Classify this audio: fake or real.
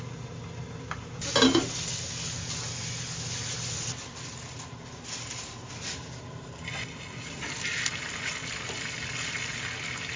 real